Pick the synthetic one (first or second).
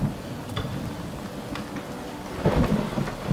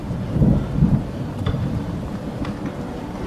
second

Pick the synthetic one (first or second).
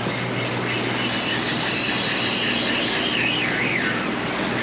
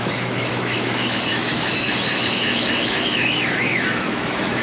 second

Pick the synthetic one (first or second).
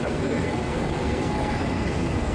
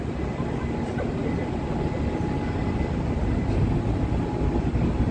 first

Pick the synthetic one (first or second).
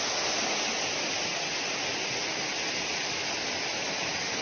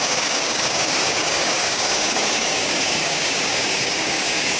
second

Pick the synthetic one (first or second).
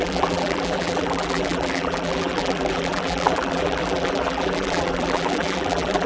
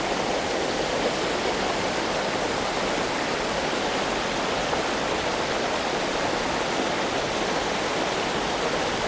first